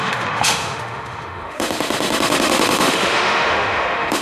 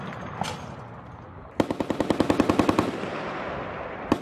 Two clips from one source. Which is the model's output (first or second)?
first